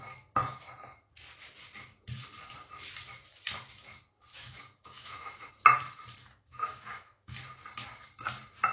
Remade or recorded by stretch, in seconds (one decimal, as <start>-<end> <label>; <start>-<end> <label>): 0.0-4.3 recorded; 4.3-5.5 remade; 5.5-6.2 recorded; 6.2-7.4 remade; 7.4-8.7 recorded